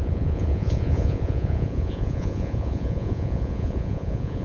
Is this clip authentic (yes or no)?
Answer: no